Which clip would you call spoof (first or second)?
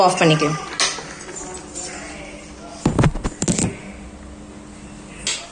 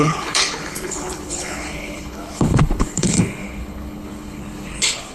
second